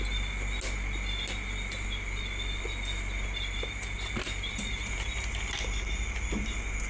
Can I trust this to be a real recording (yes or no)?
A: yes